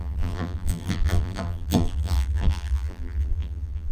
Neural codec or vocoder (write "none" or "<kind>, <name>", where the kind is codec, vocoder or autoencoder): vocoder, BigVGAN v2